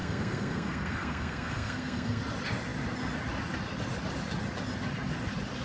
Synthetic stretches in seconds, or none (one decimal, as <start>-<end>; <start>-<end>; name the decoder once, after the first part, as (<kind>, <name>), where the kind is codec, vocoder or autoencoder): 0.0-2.2 (codec, SNAC)